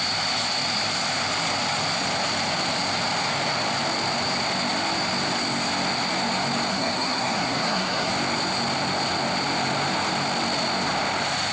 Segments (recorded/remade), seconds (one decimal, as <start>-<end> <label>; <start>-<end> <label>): 0.0-6.7 recorded; 6.7-8.1 remade; 8.1-11.5 recorded